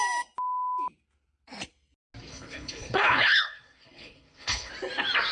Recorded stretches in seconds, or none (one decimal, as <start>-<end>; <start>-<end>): 0.0-2.3; 4.7-5.3